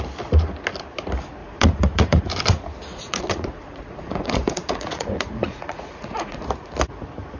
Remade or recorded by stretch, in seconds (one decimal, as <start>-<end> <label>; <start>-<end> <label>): 0.0-1.4 recorded; 1.4-2.2 remade; 2.2-2.9 recorded; 2.9-6.4 remade; 6.4-7.4 recorded